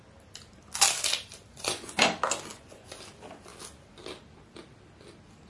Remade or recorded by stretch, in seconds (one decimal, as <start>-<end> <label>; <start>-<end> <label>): 0.0-1.5 recorded; 1.5-2.0 remade; 2.0-2.5 recorded; 2.5-3.0 remade; 3.0-5.5 recorded